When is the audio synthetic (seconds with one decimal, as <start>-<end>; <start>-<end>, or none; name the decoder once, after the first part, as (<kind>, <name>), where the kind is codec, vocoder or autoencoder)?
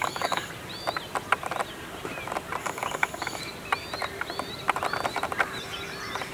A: 0.0-0.5 (codec, DAC); 2.6-3.4